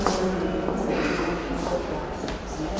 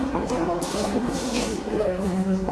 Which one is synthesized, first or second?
second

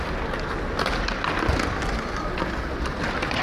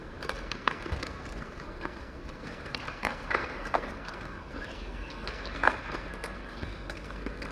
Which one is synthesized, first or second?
second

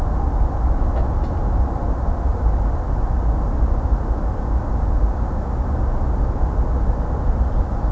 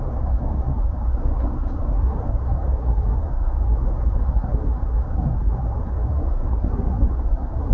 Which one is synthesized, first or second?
second